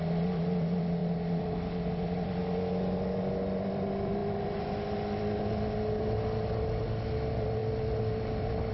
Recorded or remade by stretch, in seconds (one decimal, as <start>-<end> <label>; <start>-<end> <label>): 0.0-8.7 recorded